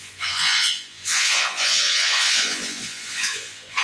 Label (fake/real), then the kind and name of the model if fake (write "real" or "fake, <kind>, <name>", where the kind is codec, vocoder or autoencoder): fake, vocoder, Vocos